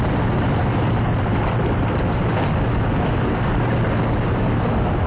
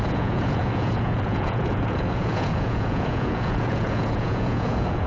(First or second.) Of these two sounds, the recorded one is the first